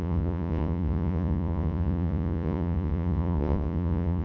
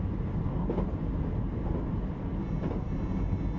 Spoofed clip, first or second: first